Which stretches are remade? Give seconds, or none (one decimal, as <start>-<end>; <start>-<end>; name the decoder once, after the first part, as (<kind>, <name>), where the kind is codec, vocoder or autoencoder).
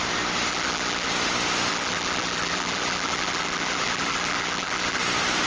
0.5-1.1 (vocoder, BigVGAN v2); 1.7-5.0